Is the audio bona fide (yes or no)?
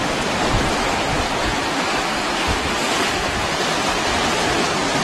yes